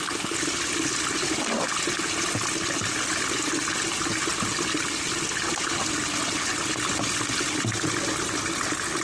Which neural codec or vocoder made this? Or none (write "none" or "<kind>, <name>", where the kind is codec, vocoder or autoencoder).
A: none